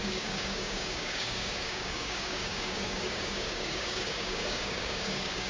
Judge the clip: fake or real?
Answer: fake